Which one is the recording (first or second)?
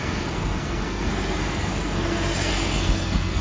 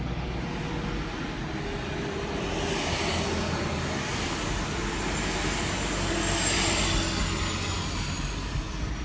second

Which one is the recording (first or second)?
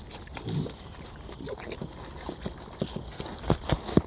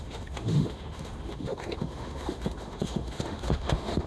first